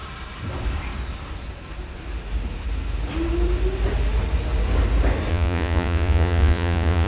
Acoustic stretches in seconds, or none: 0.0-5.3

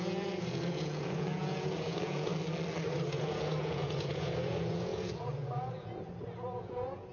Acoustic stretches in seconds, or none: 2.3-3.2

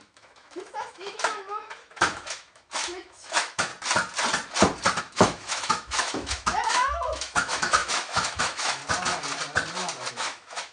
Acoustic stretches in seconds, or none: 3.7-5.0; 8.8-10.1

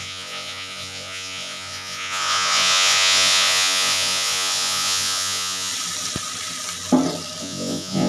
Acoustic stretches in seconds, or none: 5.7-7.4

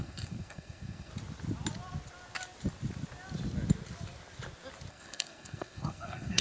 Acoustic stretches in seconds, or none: 1.1-4.9